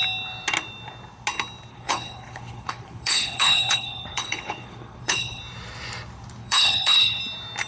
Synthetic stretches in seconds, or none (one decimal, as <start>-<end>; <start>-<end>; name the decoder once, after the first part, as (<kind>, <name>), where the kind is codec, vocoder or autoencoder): 1.7-5.4 (codec, HILCodec); 6.4-7.2